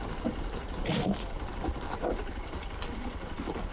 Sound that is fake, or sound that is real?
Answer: real